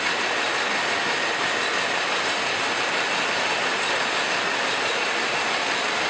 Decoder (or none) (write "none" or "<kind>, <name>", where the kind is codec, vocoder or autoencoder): none